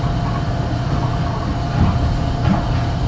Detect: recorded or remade recorded